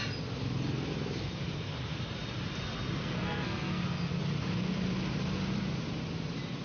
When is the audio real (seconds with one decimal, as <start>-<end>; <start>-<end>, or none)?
0.0-3.0; 3.8-6.6